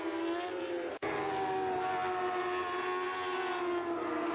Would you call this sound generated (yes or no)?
no